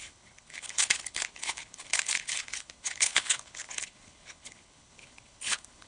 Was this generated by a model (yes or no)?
yes